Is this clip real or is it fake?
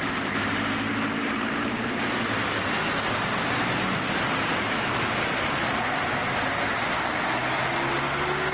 real